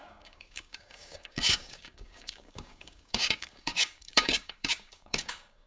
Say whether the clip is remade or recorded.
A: remade